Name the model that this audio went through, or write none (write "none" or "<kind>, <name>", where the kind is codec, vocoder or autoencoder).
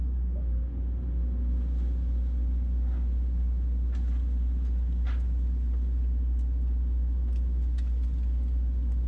none